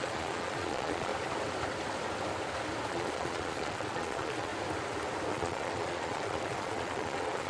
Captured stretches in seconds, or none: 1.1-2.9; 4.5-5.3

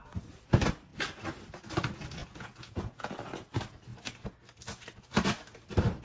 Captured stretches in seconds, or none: 0.0-2.2; 3.1-6.0

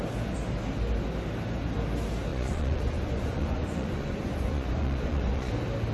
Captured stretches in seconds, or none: 0.0-2.3; 5.5-5.9

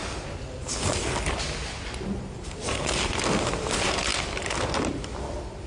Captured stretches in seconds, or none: 0.0-5.7

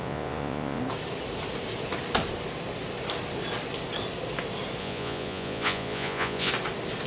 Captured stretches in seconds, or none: 0.8-4.8; 6.5-7.1

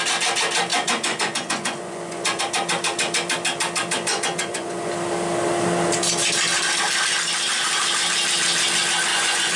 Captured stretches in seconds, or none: 0.0-0.7; 2.4-4.1; 4.9-9.1